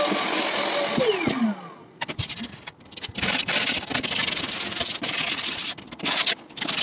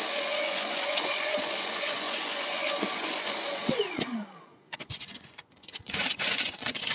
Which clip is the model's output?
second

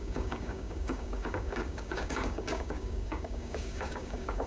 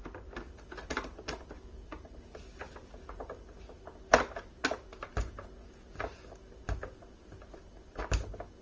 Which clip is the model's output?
first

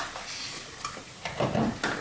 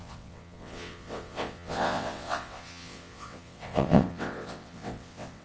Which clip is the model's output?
second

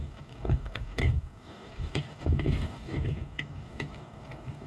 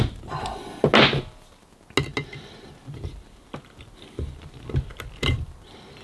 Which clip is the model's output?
first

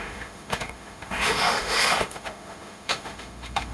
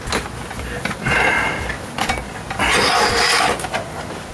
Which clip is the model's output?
first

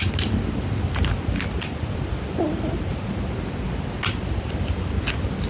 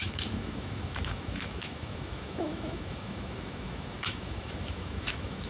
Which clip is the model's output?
second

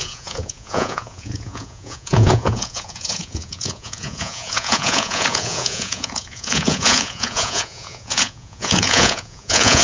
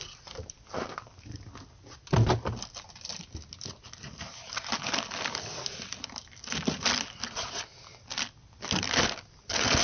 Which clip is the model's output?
first